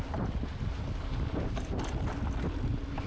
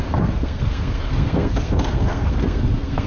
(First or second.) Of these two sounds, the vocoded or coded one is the second